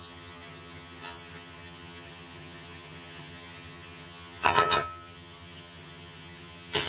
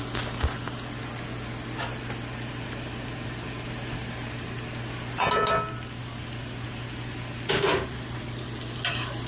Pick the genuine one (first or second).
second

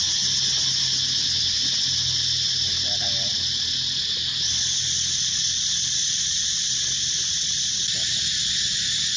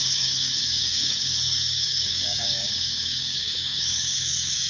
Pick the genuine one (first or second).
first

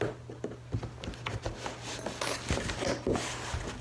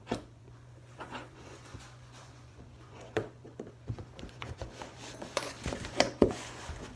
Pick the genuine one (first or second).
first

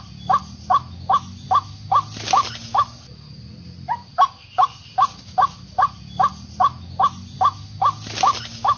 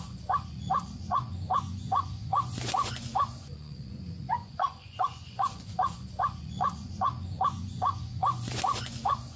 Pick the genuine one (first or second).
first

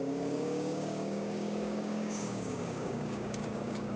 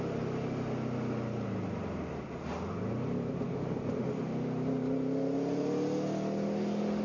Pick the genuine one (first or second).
second